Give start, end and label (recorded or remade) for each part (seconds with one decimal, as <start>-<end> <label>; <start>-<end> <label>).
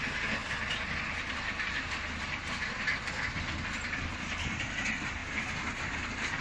0.0-6.4 recorded